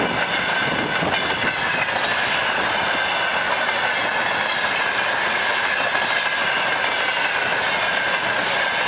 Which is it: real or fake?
real